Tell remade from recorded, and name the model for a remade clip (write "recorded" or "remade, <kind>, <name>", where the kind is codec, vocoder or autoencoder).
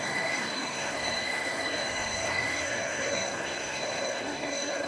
remade, codec, SNAC